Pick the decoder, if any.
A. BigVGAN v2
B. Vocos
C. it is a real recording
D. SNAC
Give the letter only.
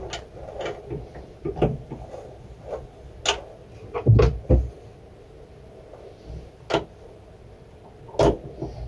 C